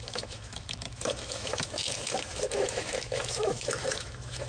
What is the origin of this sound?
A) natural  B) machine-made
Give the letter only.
B